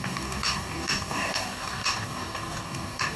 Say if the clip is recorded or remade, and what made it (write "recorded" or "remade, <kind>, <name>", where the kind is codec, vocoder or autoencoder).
remade, codec, DAC